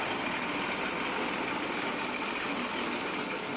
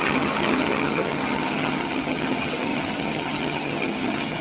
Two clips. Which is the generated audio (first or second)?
second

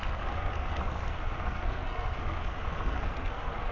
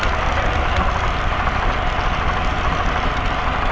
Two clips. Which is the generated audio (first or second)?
first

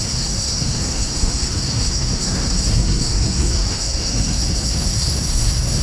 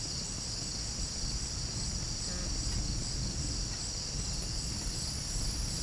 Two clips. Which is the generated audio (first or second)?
first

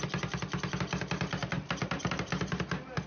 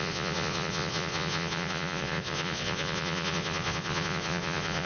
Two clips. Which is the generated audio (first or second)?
second